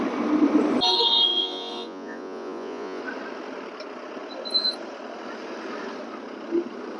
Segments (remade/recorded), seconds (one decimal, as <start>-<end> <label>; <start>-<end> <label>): 0.0-1.4 recorded; 1.4-3.0 remade; 3.0-7.0 recorded